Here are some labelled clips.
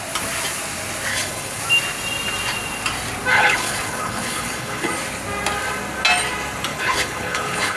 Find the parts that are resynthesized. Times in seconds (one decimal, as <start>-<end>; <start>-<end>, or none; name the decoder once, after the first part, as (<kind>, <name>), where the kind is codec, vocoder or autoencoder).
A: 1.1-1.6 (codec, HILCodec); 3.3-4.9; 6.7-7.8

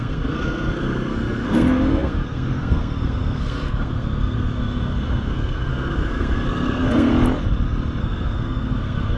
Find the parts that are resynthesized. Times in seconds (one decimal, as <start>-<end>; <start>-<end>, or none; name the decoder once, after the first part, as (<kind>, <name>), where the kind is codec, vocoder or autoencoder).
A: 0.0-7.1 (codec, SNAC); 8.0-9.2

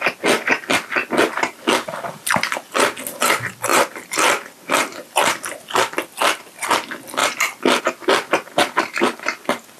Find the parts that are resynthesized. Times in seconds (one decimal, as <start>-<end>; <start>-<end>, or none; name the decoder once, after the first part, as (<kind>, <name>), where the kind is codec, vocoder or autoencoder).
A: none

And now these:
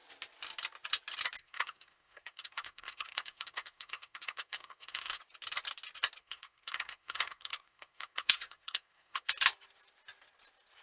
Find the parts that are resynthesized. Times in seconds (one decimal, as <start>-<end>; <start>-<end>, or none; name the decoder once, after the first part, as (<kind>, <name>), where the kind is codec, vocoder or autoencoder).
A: 1.4-5.2 (codec, SNAC); 6.2-9.3

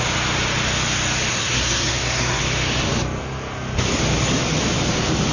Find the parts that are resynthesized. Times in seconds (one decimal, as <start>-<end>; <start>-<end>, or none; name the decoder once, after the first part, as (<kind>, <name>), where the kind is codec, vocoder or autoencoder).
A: 1.3-2.4 (codec, SNAC)